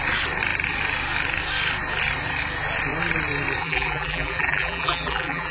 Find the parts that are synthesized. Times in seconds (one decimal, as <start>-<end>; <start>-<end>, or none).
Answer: 3.6-5.5